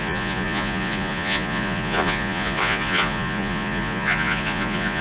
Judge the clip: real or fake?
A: fake